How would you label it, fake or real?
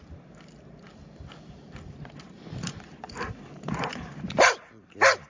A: real